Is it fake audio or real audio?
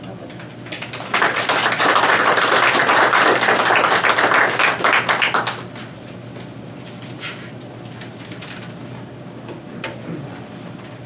real